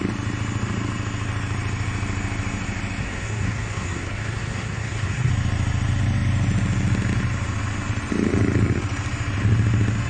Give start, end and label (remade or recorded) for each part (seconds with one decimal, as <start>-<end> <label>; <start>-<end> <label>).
0.0-3.0 recorded; 3.0-5.3 remade; 5.3-10.1 recorded